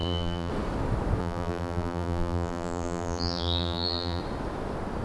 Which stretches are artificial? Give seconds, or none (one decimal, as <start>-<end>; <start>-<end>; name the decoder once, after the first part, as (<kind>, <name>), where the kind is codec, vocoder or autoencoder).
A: 0.0-0.5 (vocoder, BigVGAN v2); 1.2-4.2